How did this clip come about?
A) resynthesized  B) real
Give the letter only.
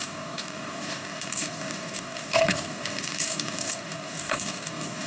A